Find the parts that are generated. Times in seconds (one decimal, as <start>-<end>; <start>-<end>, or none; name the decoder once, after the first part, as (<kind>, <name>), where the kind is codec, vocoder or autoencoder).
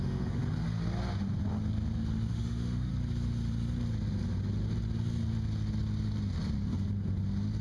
0.0-0.4 (autoencoder, DAC-VAE); 2.3-2.9